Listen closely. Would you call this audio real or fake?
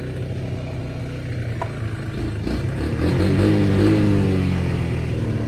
real